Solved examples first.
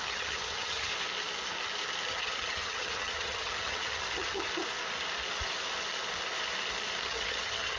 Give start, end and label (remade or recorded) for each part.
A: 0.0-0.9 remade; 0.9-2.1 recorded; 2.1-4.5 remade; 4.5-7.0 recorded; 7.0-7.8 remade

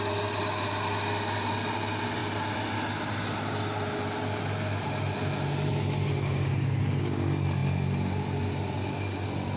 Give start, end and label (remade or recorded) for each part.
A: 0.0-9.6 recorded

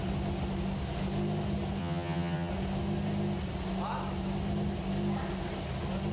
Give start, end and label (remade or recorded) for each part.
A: 0.0-1.8 recorded; 1.8-2.5 remade; 2.5-6.1 recorded

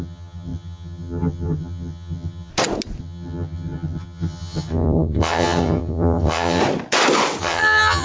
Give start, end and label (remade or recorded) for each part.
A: 0.0-2.5 remade; 2.5-3.0 recorded; 3.0-6.6 remade; 6.6-7.4 recorded; 7.4-8.0 remade

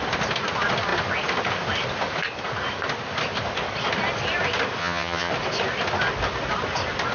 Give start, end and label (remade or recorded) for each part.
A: 0.0-4.8 recorded; 4.8-5.3 remade; 5.3-7.1 recorded